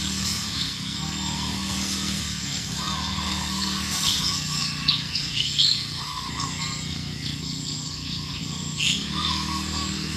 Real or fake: fake